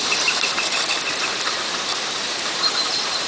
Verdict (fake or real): fake